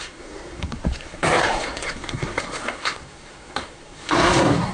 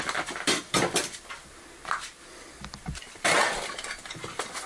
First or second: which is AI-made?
first